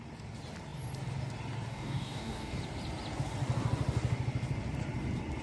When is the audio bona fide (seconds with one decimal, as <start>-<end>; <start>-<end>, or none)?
0.0-1.7; 2.6-5.4